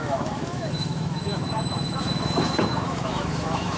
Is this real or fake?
fake